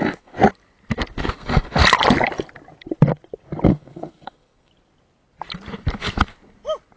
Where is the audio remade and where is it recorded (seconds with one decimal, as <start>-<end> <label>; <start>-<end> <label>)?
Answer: 0.0-0.4 remade; 0.4-1.3 recorded; 1.3-1.8 remade; 1.8-3.7 recorded; 3.7-4.7 remade; 4.7-7.0 recorded